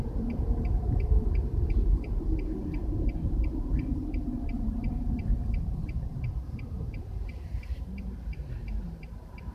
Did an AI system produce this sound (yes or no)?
yes